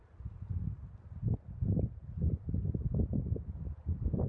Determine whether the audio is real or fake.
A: real